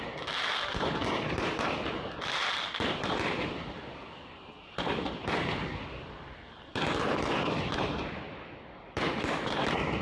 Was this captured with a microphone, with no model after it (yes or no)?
yes